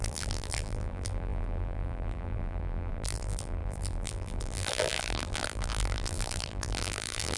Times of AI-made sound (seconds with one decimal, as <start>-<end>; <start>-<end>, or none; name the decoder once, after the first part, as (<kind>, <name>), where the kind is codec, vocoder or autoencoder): 0.0-7.4 (vocoder, BigVGAN v2)